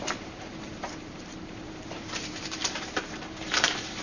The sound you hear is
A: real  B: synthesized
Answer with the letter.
B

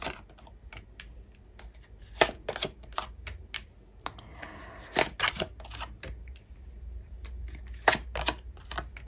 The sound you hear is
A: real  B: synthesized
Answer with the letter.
A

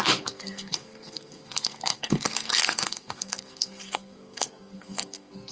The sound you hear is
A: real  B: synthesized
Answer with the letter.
B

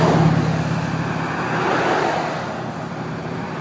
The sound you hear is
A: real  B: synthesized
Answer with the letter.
A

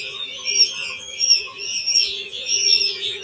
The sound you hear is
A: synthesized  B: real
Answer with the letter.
A